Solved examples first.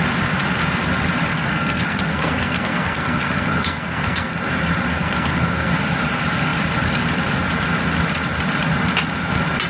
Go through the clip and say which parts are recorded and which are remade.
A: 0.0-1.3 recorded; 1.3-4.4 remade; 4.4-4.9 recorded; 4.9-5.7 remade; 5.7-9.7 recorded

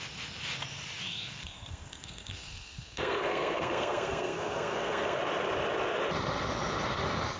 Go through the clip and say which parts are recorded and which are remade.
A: 0.0-1.1 recorded; 1.1-5.2 remade; 5.2-7.4 recorded

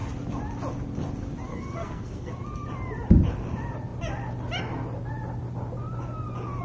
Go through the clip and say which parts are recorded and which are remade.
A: 0.0-1.5 recorded; 1.5-2.3 remade; 2.3-6.6 recorded